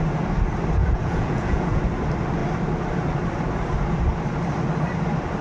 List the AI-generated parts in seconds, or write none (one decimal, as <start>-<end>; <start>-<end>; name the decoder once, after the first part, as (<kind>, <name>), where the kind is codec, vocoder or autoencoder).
0.8-1.8 (vocoder, Vocos)